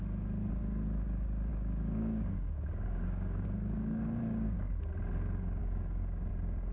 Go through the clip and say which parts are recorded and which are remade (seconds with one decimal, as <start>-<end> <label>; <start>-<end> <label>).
0.0-1.5 recorded; 1.5-4.9 remade; 4.9-5.6 recorded; 5.6-6.3 remade; 6.3-6.7 recorded